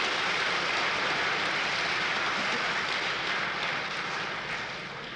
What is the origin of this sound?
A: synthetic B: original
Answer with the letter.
B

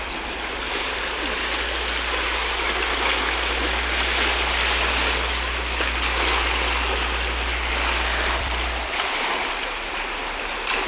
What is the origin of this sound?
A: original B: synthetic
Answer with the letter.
A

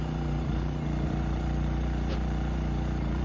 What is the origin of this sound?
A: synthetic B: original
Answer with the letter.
A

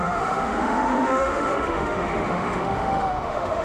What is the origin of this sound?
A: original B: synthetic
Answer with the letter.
B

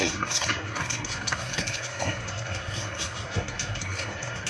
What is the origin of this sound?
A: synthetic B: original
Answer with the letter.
A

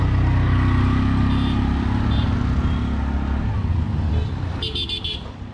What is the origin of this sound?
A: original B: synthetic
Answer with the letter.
A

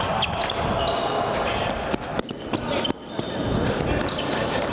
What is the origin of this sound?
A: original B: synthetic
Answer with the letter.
A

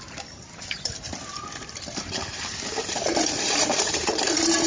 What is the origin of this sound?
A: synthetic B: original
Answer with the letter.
A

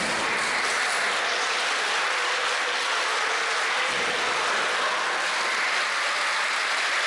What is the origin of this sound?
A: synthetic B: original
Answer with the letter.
B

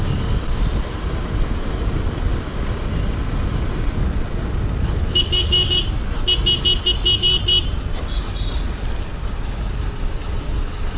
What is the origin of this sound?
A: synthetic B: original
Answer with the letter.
B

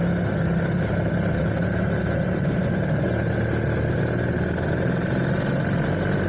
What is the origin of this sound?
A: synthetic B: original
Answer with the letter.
B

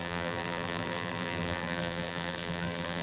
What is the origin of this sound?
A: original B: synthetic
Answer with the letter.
B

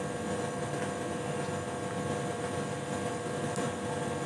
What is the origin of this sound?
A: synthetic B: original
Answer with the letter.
B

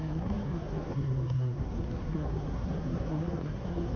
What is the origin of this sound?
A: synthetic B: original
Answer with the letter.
A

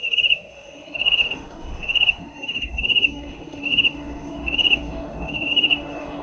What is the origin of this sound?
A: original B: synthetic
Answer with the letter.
B